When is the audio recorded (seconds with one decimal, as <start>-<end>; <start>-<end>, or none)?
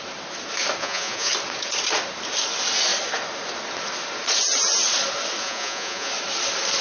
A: 0.0-0.8; 1.3-5.4; 6.1-6.8